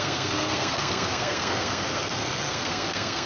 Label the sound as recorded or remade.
remade